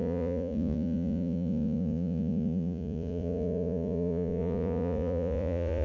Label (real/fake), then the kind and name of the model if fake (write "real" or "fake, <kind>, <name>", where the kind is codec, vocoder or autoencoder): fake, vocoder, Vocos